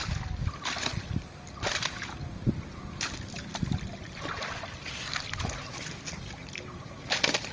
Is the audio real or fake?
real